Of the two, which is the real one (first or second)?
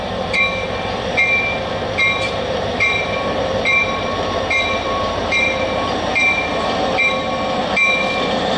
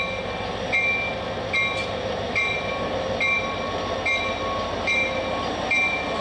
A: second